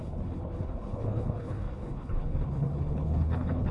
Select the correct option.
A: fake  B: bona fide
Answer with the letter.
A